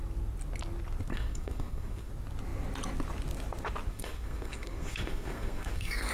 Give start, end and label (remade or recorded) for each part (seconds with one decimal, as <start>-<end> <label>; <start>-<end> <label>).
0.0-1.1 recorded; 1.1-2.1 remade; 2.1-3.9 recorded; 3.9-6.1 remade